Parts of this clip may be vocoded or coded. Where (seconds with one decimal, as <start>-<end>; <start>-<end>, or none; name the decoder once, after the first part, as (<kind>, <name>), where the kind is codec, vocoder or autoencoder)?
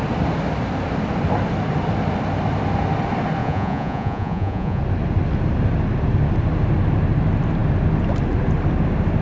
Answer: 3.4-4.8 (vocoder, Vocos)